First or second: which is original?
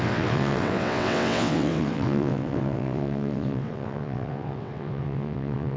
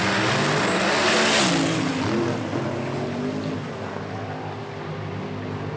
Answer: second